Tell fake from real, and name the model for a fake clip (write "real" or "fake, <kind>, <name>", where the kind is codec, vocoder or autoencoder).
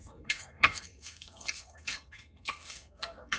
fake, codec, SNAC